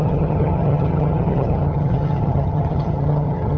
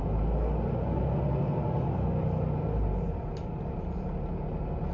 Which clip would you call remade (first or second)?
first